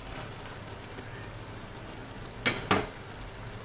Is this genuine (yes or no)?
yes